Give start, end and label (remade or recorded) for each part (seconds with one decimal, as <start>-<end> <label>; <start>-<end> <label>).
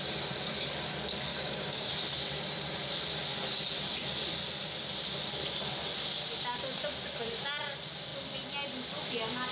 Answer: 0.0-1.3 recorded; 1.3-1.9 remade; 1.9-9.5 recorded